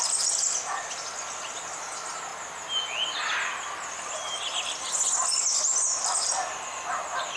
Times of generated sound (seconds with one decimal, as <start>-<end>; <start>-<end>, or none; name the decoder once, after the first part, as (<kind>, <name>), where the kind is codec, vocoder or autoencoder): none